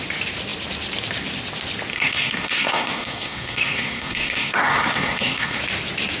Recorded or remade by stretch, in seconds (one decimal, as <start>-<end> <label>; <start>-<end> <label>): 0.0-1.9 recorded; 1.9-5.6 remade; 5.6-6.2 recorded